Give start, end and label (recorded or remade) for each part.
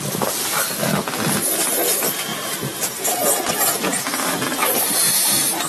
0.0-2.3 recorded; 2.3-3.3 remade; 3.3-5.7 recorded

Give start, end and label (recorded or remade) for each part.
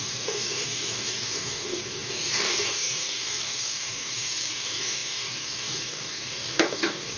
0.0-7.2 remade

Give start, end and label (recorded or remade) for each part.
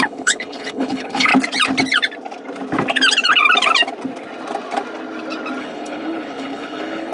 0.0-1.3 remade; 1.3-5.6 recorded; 5.6-7.1 remade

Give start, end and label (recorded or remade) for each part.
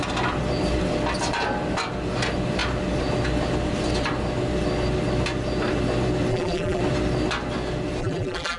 0.0-6.3 recorded; 6.3-6.8 remade; 6.8-8.0 recorded; 8.0-8.6 remade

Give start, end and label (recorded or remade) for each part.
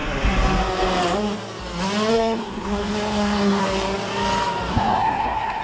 0.0-2.1 recorded; 2.1-3.6 remade; 3.6-4.7 recorded; 4.7-5.6 remade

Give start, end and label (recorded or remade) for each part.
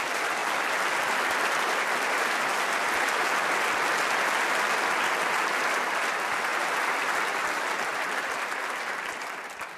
0.0-9.8 recorded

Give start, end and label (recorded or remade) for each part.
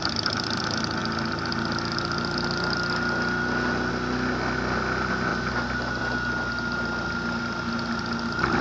0.0-8.6 recorded